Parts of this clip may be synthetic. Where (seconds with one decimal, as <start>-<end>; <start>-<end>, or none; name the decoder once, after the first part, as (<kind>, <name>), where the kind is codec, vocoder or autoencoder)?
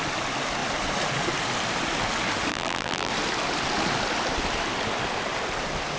2.5-3.1 (vocoder, BigVGAN v2)